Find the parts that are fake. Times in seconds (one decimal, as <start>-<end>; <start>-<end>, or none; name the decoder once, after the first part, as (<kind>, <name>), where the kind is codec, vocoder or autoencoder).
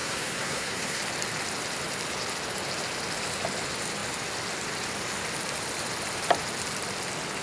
0.0-1.0 (codec, SNAC)